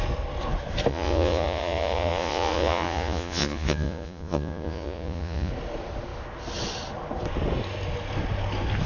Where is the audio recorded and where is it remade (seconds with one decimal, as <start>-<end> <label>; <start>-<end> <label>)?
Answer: 0.0-0.9 recorded; 0.9-5.5 remade; 5.5-8.9 recorded